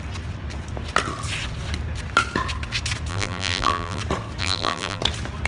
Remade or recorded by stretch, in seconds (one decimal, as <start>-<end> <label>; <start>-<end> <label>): 0.0-3.1 recorded; 3.1-4.0 remade; 4.0-4.4 recorded; 4.4-5.0 remade; 5.0-5.5 recorded